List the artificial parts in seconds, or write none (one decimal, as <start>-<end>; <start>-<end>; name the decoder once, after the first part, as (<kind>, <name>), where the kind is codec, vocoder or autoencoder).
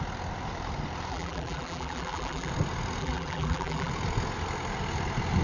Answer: 1.1-2.5 (vocoder, BigVGAN v2); 3.0-3.9